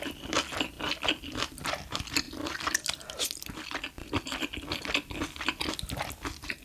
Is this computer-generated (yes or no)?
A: no